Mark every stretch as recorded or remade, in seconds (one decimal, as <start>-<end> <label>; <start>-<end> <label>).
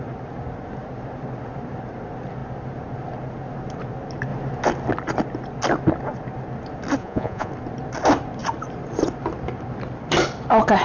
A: 0.0-7.0 recorded; 7.0-7.5 remade; 7.5-10.8 recorded